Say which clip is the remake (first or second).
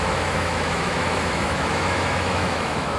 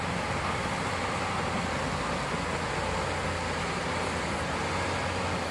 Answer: first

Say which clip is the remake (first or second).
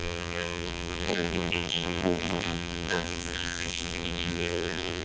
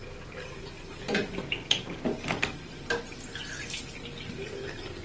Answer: first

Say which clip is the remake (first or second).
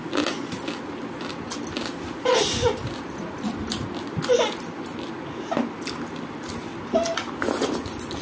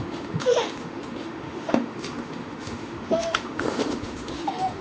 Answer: second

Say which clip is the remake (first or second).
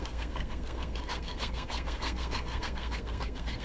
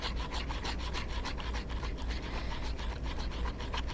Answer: first